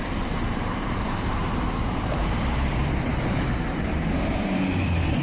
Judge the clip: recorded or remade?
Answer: remade